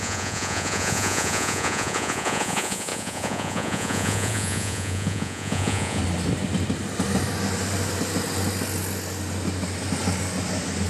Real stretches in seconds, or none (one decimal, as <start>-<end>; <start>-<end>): 6.0-10.9